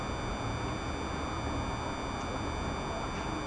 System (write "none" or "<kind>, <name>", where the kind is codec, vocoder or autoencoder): none